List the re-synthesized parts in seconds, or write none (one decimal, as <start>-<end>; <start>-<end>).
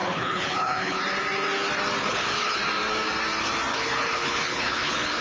0.0-1.0; 2.0-2.6; 3.7-5.2